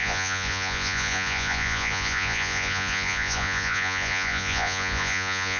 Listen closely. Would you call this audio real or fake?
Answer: fake